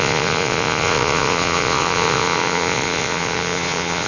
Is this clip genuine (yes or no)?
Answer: no